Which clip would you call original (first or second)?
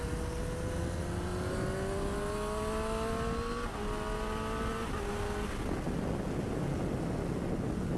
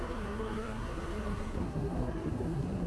first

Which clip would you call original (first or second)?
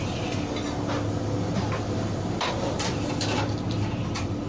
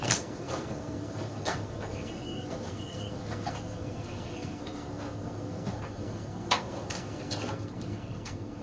first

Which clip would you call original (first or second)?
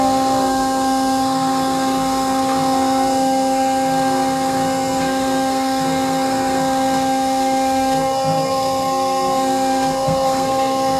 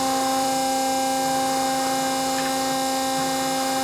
second